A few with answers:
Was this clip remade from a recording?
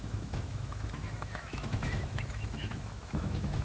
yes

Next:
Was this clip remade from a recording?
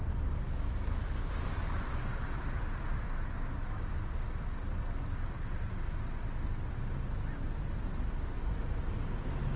no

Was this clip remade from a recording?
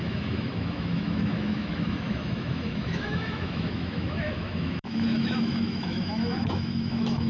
yes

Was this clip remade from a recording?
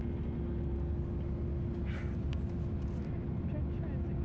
no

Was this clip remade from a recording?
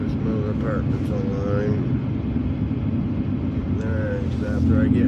no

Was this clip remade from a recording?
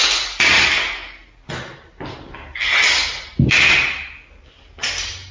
no